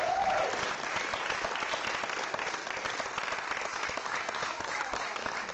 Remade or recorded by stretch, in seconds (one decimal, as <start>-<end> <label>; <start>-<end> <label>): 0.0-0.4 remade; 0.4-3.6 recorded; 3.6-5.5 remade